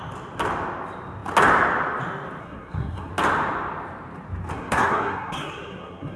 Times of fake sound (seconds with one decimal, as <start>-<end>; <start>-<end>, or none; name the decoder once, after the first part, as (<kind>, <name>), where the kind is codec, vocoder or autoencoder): 2.4-3.1 (codec, SNAC); 4.5-6.2